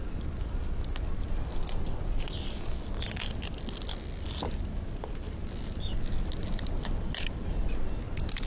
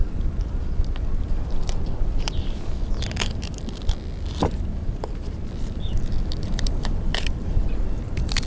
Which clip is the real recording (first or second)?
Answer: first